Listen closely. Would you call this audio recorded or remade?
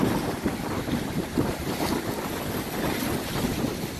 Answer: recorded